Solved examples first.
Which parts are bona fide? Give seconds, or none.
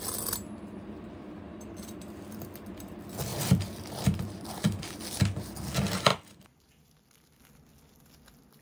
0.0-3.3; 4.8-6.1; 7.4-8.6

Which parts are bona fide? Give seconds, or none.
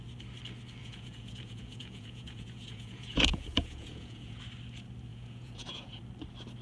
0.0-0.8; 4.4-5.1; 6.0-6.6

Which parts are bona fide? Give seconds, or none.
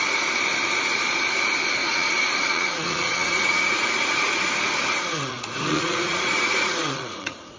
0.0-1.8; 4.5-4.9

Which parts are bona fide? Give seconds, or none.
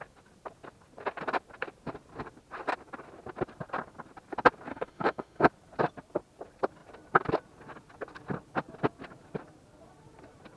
0.0-4.7; 5.5-10.6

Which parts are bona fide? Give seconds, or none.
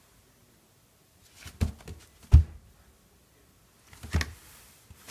0.0-5.1